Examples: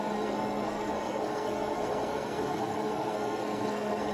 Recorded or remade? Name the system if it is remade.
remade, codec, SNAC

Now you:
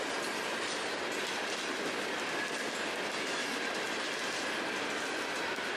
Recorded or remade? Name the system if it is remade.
recorded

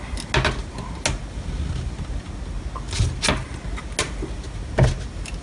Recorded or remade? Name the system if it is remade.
recorded